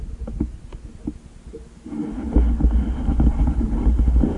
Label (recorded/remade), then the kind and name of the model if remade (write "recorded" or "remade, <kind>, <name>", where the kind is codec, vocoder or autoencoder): recorded